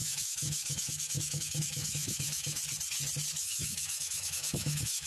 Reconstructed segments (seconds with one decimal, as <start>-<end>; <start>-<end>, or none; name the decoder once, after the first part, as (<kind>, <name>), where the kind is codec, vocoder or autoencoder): 0.0-2.6 (autoencoder, DAC-VAE); 3.4-5.1